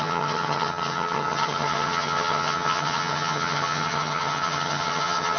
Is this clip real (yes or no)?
no